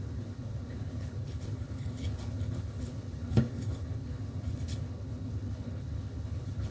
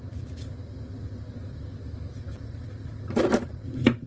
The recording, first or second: second